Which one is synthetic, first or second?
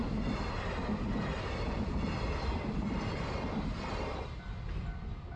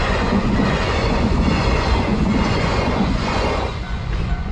second